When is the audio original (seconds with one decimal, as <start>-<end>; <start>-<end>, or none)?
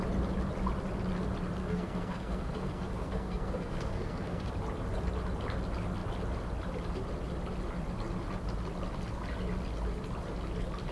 0.0-1.6; 4.5-10.9